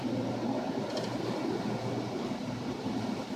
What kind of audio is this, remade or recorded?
recorded